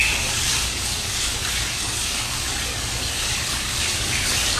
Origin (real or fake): fake